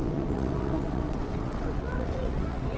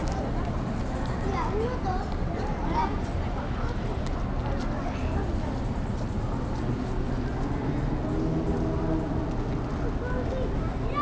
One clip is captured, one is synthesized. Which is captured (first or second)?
second